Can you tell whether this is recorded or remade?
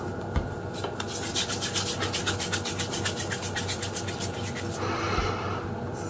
recorded